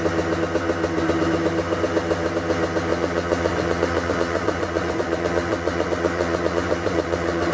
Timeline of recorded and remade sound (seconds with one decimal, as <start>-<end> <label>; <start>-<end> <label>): 0.0-2.9 recorded; 2.9-7.5 remade